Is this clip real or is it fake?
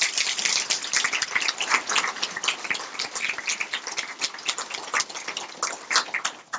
real